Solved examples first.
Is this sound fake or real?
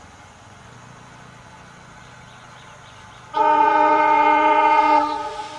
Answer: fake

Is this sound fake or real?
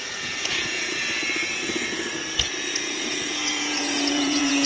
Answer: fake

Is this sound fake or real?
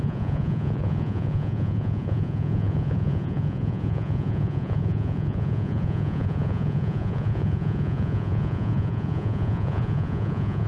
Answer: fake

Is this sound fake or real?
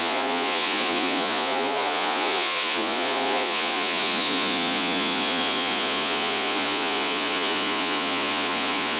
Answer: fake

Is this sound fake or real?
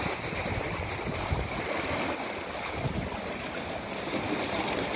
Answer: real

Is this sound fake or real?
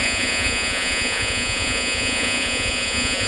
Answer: fake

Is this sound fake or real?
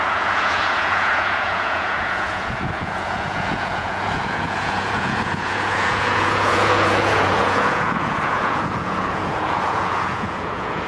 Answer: fake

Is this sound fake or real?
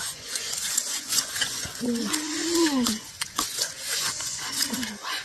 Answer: fake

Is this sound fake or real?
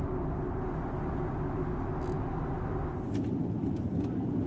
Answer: real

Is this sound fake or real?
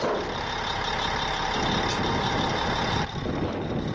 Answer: real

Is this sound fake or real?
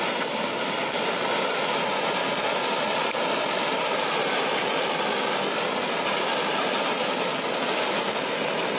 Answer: real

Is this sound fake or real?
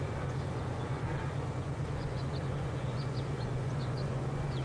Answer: fake